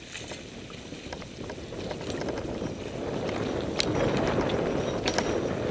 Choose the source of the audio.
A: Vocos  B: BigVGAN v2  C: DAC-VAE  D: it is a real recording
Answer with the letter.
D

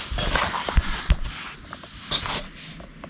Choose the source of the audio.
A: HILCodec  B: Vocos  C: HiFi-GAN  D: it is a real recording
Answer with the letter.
D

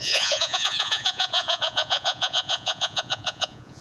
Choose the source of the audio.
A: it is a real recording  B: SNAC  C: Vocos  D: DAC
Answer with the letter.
C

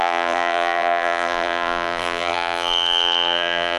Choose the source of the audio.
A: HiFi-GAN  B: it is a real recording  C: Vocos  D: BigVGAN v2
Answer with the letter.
D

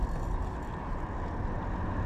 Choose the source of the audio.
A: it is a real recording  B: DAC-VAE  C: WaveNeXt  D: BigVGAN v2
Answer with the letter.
A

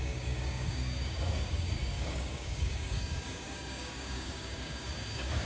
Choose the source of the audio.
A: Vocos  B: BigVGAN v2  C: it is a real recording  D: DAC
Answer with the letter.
D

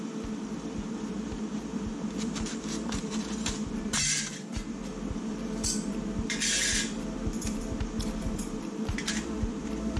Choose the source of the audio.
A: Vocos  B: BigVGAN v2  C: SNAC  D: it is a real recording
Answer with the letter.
B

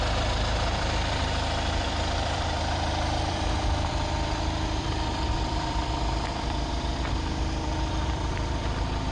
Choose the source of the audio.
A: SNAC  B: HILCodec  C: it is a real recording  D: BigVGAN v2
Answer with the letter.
D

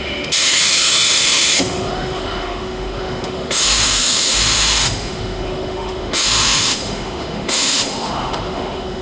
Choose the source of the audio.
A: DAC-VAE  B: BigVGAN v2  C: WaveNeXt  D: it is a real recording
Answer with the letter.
A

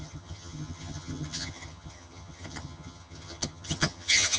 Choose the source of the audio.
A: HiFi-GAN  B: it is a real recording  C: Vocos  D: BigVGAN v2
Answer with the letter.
A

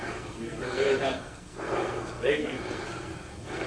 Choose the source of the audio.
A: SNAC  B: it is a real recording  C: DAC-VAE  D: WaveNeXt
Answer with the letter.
A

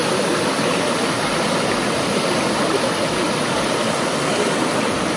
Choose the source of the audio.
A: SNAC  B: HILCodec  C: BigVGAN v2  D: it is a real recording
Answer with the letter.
D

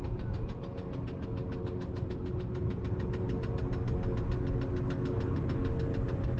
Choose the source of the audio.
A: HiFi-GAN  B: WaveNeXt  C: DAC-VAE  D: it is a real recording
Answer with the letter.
D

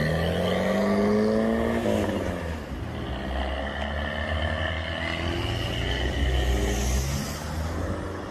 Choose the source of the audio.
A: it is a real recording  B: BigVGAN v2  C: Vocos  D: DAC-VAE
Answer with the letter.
A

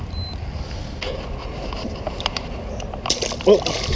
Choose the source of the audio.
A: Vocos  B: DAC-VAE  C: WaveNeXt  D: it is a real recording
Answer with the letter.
D